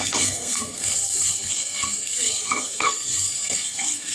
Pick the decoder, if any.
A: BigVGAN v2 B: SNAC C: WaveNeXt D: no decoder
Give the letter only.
B